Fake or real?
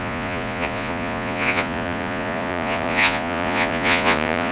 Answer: fake